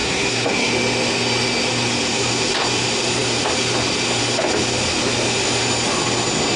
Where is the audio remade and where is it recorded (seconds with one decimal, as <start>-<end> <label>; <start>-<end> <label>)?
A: 0.0-0.7 remade; 0.7-6.6 recorded